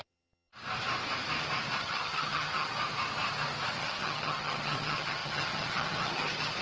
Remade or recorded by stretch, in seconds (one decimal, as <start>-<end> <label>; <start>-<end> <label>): 0.0-0.5 remade; 0.5-1.8 recorded; 1.8-2.7 remade; 2.7-3.7 recorded; 3.7-6.6 remade